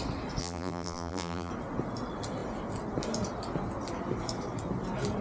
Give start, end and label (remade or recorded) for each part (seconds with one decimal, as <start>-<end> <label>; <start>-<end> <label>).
0.0-0.4 recorded; 0.4-1.5 remade; 1.5-5.2 recorded